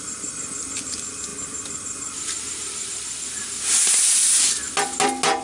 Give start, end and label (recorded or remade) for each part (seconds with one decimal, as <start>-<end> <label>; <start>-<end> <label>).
0.0-5.4 recorded

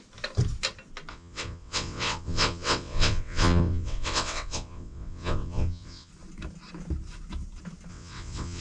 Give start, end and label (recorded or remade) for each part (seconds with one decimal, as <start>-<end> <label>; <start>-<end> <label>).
0.0-1.1 recorded; 1.1-6.1 remade; 6.1-7.9 recorded; 7.9-8.6 remade

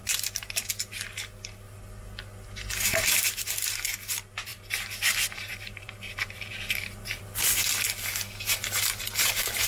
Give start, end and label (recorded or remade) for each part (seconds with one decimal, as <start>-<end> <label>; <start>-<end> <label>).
0.0-0.7 remade; 0.7-5.5 recorded; 5.5-7.2 remade; 7.2-9.7 recorded

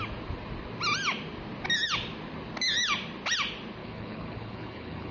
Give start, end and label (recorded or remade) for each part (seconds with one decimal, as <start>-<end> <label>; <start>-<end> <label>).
0.0-3.8 recorded; 3.8-5.1 remade

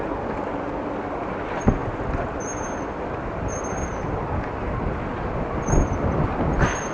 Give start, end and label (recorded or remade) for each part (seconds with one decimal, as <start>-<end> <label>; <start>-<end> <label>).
0.0-6.9 recorded

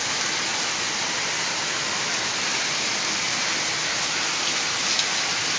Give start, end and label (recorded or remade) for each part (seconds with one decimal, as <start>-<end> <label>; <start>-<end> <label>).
0.0-5.6 recorded

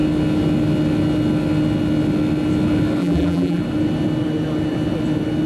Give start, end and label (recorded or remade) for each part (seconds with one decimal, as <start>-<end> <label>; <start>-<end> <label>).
0.0-3.0 recorded; 3.0-3.6 remade; 3.6-5.5 recorded

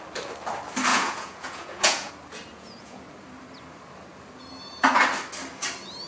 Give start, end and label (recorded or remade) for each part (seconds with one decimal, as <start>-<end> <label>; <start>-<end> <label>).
0.0-0.9 recorded; 0.9-2.1 remade; 2.1-2.5 recorded; 2.5-3.0 remade; 3.0-6.1 recorded